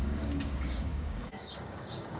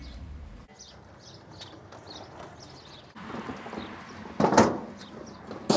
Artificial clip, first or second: first